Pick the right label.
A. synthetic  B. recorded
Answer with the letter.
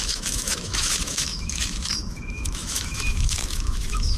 A